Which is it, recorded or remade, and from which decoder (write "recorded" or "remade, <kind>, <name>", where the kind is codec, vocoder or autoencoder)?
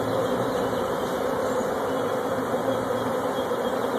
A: recorded